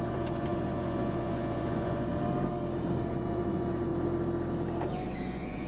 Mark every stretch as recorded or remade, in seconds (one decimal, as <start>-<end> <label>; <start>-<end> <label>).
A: 0.0-2.1 remade; 2.1-3.1 recorded; 3.1-3.9 remade; 3.9-4.9 recorded; 4.9-5.7 remade